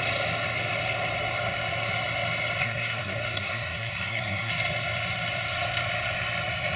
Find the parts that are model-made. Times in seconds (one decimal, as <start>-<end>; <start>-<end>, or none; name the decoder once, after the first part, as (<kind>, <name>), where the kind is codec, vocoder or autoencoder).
2.6-4.5 (codec, SNAC)